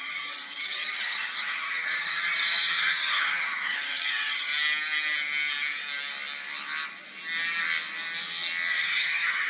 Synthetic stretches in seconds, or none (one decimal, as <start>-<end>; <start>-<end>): 0.0-4.5; 8.7-9.5